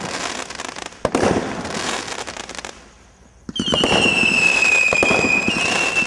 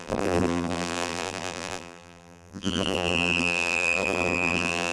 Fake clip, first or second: second